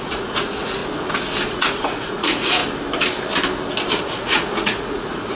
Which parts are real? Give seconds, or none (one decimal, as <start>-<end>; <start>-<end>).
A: 0.8-1.5; 2.6-4.0